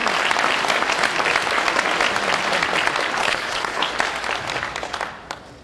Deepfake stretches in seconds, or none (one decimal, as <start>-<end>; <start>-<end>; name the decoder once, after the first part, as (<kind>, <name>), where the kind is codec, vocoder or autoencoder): 3.2-3.9 (codec, HILCodec)